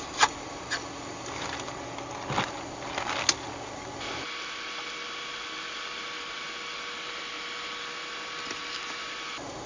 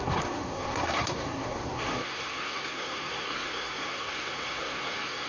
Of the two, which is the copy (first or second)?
second